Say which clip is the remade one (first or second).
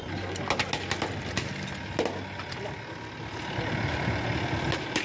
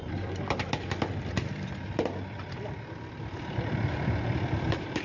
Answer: second